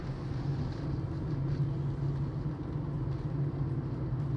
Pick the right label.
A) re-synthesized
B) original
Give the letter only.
B